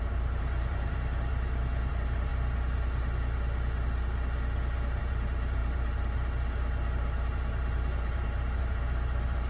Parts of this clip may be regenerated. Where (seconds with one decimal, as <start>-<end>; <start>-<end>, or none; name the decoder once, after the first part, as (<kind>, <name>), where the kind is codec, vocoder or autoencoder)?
0.0-1.3 (vocoder, BigVGAN v2); 1.9-2.3; 5.0-9.5